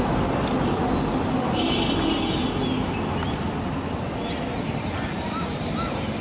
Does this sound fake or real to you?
real